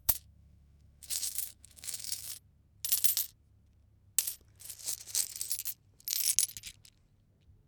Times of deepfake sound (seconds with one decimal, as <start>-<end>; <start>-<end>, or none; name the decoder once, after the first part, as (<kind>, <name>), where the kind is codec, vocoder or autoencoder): 0.0-2.3 (autoencoder, DAC-VAE)